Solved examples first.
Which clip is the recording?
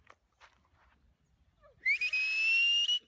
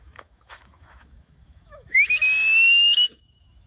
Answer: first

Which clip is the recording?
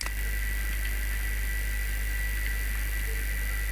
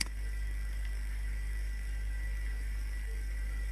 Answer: first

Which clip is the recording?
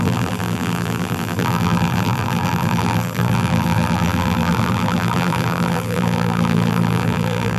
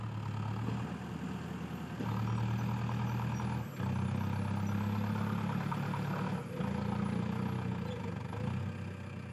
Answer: second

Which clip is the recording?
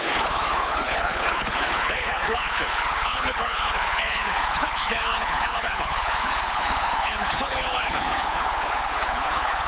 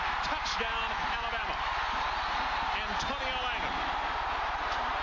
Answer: second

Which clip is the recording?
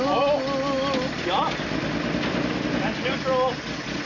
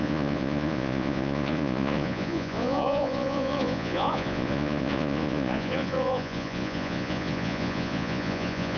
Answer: first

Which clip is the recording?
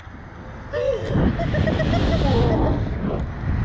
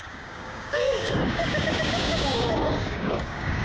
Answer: first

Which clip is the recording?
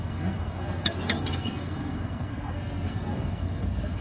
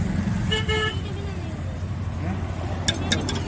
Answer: second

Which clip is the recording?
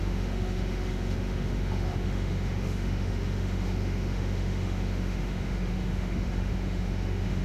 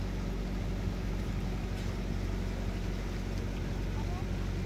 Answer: second